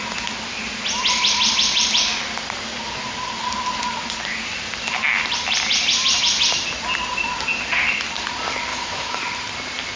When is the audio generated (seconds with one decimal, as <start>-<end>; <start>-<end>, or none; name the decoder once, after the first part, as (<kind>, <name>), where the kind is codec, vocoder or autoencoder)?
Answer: 8.7-9.2 (autoencoder, DAC-VAE)